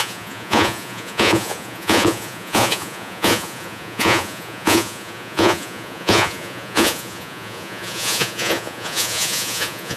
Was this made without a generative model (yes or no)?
no